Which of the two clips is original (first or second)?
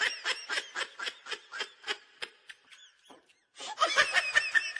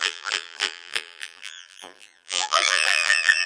first